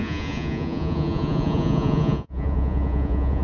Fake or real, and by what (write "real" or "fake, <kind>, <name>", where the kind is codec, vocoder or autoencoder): fake, vocoder, Vocos